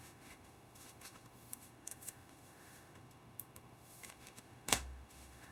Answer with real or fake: fake